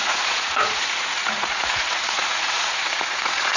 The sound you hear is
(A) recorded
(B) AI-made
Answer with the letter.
B